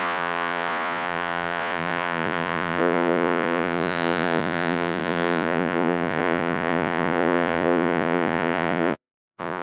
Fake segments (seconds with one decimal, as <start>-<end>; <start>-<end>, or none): 0.0-9.6